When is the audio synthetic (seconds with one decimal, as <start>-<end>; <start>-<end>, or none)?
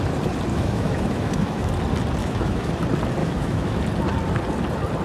0.5-1.7; 2.2-2.7; 3.2-3.8